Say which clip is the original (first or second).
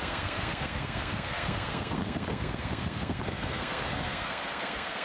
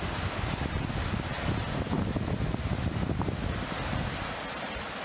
second